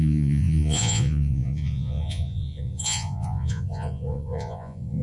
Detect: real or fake fake